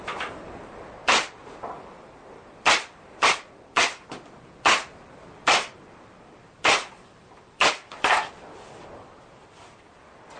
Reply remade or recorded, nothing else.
remade